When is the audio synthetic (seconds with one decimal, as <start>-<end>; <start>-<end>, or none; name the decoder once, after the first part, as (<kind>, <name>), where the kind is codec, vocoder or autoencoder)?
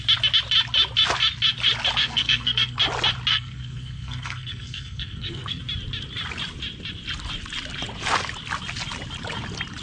2.0-2.8 (codec, SNAC); 3.3-5.6